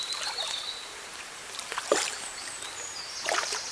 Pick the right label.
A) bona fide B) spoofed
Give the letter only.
B